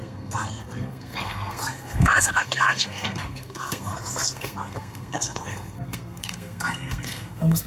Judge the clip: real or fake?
fake